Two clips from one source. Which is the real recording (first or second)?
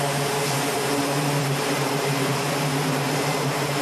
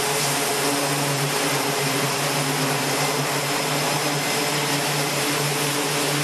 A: second